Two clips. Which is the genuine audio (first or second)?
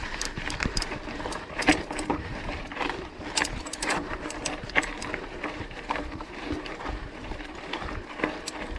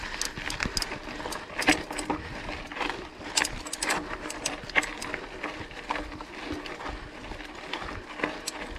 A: second